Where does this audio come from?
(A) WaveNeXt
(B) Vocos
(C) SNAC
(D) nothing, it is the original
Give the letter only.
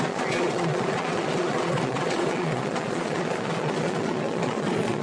B